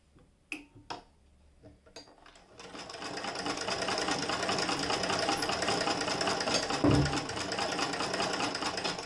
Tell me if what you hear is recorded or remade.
recorded